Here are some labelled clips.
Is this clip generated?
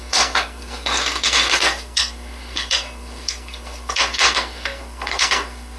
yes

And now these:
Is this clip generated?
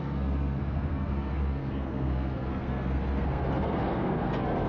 yes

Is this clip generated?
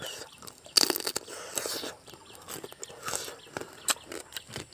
no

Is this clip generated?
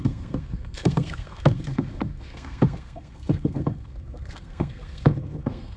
yes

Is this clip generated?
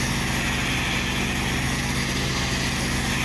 no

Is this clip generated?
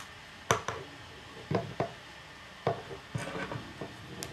no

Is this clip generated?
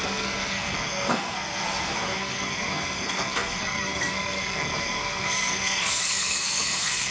yes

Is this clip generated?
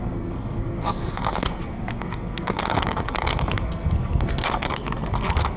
yes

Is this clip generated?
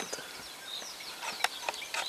no